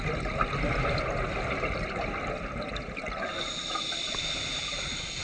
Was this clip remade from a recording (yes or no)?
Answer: no